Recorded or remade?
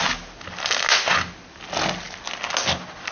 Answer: recorded